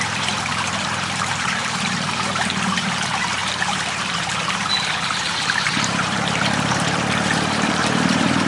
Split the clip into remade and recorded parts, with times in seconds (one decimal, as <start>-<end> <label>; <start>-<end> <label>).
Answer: 0.0-8.5 remade